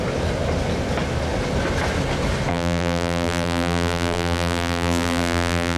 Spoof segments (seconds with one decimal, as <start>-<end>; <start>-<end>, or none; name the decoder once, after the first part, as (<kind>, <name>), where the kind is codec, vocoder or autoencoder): 2.5-5.8 (vocoder, BigVGAN v2)